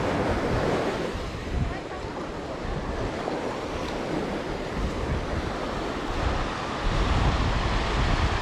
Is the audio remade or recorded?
recorded